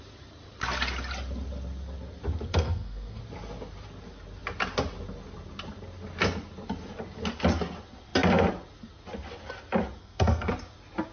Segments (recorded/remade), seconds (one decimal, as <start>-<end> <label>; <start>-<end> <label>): 0.0-2.5 recorded; 2.5-3.2 remade; 3.2-10.0 recorded; 10.0-10.5 remade; 10.5-11.1 recorded